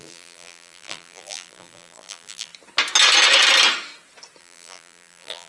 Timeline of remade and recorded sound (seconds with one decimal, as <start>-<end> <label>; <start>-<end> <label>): 0.0-2.5 remade; 2.5-4.4 recorded; 4.4-5.5 remade